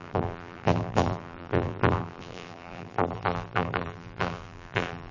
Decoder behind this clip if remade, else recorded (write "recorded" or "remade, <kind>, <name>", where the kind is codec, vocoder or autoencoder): remade, vocoder, BigVGAN v2